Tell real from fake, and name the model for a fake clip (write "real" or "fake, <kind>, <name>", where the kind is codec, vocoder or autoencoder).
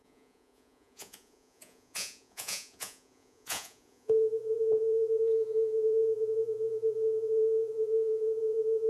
fake, vocoder, Vocos